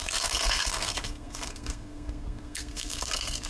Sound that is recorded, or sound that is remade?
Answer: remade